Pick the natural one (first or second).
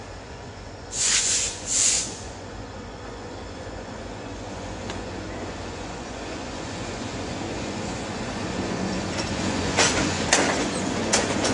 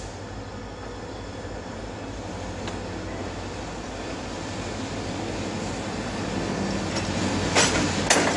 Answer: second